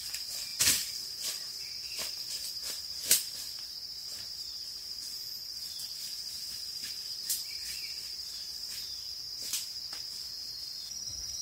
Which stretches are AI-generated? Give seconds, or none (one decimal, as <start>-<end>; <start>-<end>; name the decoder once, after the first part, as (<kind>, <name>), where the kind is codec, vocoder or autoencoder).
0.0-4.8 (vocoder, BigVGAN v2); 5.7-9.4